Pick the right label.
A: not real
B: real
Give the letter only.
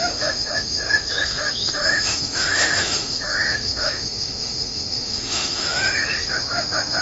A